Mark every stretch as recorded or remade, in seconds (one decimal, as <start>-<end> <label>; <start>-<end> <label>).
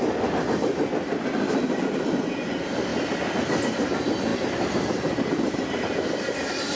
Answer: 0.0-6.8 recorded